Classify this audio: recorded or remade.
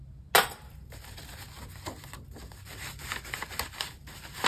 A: recorded